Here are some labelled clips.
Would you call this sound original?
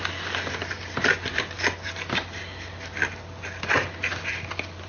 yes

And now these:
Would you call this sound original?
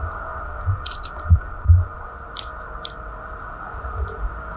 yes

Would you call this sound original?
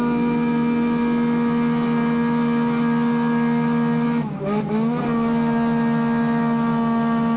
yes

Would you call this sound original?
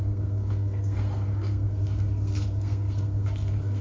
no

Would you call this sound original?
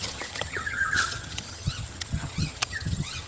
no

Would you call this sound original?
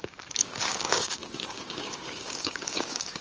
no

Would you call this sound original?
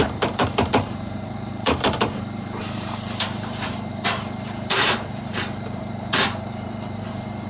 no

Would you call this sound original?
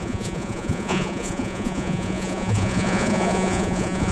no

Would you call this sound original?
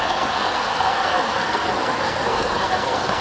no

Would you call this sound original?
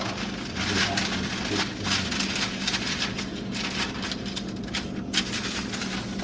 yes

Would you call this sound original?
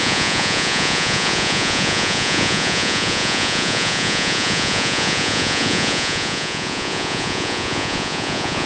no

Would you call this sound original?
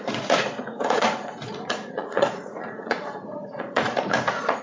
no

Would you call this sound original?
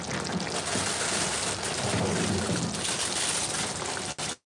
yes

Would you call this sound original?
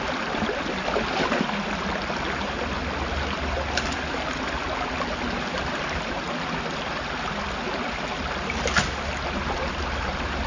yes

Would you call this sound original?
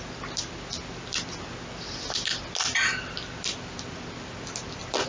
yes